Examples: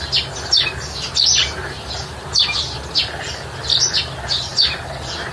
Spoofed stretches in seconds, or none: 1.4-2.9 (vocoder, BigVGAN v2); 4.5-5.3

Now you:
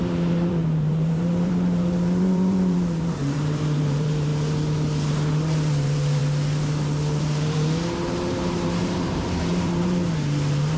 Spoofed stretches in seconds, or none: 0.0-4.3 (vocoder, BigVGAN v2); 5.1-6.2; 7.2-10.8

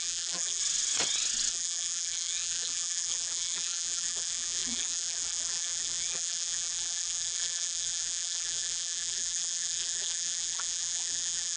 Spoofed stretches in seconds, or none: 0.0-0.6 (vocoder, BigVGAN v2); 1.5-11.6

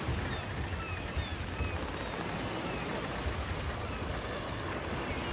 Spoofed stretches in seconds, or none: none